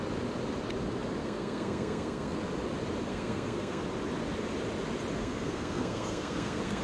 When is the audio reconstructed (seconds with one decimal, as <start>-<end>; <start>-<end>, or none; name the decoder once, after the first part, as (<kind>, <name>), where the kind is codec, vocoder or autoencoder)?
1.2-2.4 (codec, SNAC); 3.1-3.8; 5.2-6.8